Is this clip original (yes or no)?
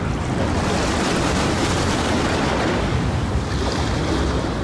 yes